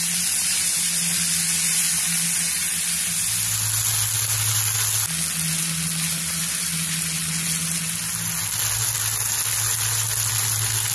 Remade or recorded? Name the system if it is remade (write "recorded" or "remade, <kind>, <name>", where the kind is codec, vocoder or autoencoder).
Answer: recorded